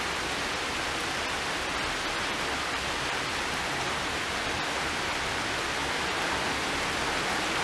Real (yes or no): yes